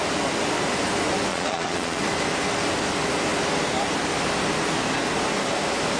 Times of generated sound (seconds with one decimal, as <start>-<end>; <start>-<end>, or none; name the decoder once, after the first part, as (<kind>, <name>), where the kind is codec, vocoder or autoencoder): 1.3-2.0 (vocoder, Vocos)